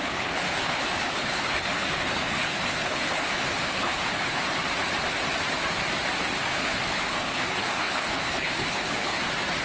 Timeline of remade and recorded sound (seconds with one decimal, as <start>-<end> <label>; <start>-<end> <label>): 0.0-4.4 remade; 4.4-6.5 recorded; 6.5-9.2 remade; 9.2-9.6 recorded